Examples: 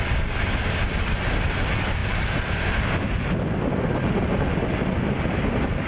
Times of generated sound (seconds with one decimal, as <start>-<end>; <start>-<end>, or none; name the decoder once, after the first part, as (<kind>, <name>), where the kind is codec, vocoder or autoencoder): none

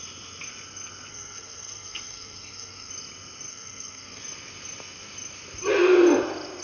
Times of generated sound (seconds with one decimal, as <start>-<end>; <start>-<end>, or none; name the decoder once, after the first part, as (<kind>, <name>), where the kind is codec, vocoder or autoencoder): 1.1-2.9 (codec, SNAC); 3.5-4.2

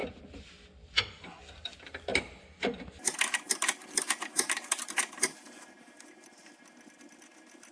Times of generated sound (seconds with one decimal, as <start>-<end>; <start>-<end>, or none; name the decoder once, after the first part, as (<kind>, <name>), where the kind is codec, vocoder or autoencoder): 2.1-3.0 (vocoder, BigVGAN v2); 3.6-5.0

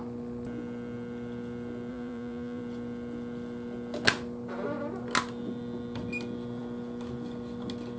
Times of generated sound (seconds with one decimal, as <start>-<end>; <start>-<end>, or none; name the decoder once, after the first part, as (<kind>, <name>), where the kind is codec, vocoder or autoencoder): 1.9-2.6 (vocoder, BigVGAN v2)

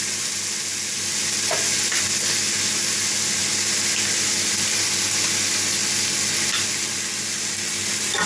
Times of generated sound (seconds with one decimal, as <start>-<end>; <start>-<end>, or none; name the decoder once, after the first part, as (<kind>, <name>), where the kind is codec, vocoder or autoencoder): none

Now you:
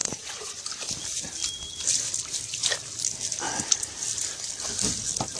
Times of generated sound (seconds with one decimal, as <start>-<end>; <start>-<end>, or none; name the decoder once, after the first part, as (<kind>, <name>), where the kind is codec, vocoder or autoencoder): 0.0-0.6 (vocoder, Vocos)